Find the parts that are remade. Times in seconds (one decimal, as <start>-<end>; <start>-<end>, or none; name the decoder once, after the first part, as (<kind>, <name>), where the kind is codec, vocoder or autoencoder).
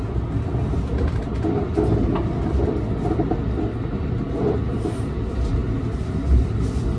none